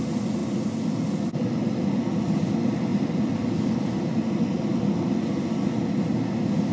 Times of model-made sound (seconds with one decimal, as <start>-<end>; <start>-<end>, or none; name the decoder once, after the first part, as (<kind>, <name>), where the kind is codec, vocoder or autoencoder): none